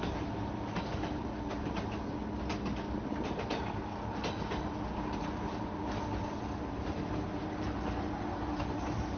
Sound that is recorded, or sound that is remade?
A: recorded